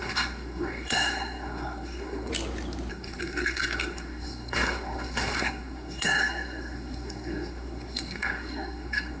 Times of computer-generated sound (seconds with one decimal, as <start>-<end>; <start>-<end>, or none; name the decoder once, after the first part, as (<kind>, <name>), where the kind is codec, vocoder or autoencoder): 0.0-2.3 (codec, SNAC); 2.9-9.2